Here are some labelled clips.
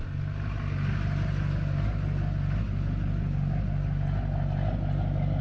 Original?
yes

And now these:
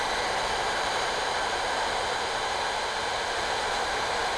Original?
no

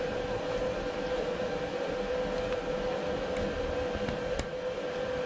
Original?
yes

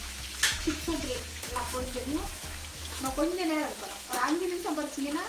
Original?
no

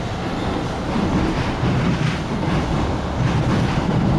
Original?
yes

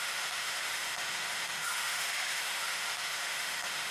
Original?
no